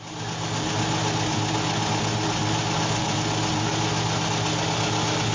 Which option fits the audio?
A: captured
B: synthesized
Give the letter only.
A